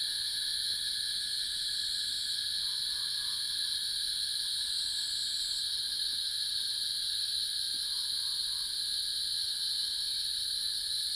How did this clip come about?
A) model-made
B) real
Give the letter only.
B